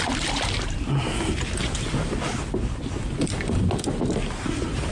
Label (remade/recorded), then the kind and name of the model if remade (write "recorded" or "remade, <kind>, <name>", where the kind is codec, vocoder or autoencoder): recorded